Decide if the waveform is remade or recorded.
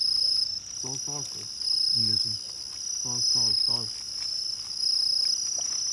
recorded